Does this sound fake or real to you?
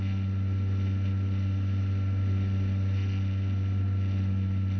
real